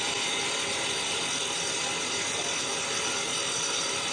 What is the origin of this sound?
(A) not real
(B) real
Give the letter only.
B